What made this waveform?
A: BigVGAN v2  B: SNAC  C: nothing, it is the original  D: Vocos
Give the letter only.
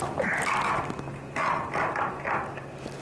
C